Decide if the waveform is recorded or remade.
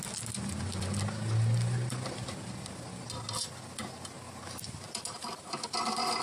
recorded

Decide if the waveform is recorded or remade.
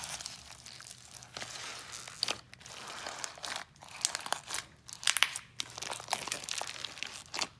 recorded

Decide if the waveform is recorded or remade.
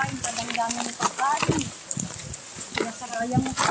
recorded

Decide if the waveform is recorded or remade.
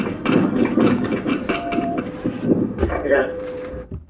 remade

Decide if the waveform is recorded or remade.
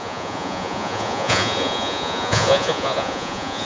remade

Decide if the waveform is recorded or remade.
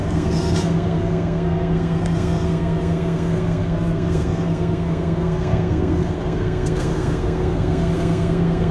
remade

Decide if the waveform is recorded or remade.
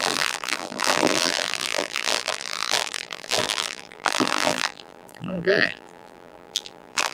remade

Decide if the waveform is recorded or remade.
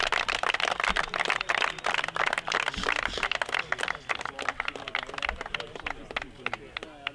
recorded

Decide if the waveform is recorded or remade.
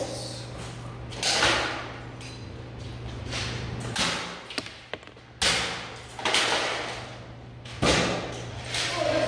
recorded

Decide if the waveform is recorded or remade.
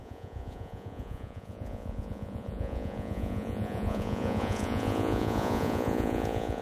remade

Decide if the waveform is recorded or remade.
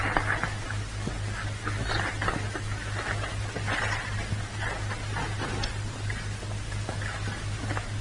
recorded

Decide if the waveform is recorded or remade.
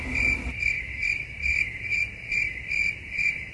remade